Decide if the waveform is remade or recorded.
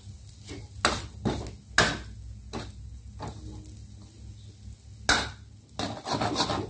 recorded